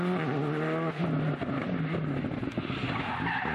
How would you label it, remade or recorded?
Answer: recorded